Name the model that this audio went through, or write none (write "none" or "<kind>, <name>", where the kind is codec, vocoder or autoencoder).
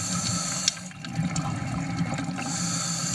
none